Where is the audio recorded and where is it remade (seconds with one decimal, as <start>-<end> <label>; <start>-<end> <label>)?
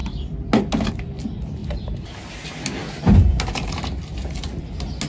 0.0-5.1 recorded